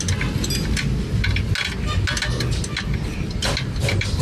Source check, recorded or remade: recorded